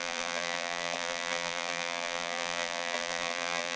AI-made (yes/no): yes